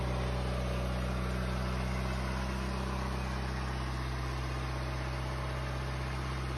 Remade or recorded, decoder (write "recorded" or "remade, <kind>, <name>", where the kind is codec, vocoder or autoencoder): recorded